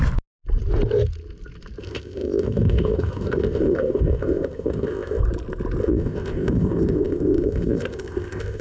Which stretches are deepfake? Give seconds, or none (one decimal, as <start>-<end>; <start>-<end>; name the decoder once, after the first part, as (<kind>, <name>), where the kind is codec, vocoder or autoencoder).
1.8-5.2 (codec, ZipCodec); 5.8-8.6